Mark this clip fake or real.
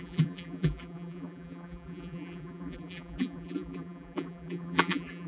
fake